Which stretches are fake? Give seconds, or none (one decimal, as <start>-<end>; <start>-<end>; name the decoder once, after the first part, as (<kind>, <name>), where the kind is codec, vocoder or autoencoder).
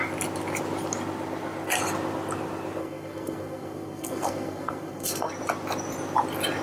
2.8-5.3 (codec, SNAC)